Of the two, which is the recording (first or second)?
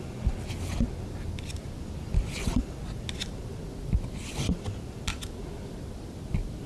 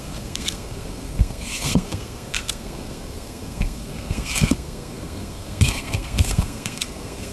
first